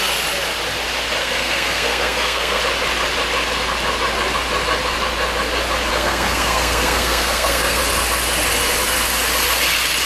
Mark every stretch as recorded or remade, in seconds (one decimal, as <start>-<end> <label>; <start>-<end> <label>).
0.0-1.2 recorded; 1.2-2.6 remade; 2.6-5.9 recorded; 5.9-7.8 remade; 7.8-10.1 recorded